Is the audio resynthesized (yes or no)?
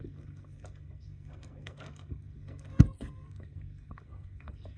yes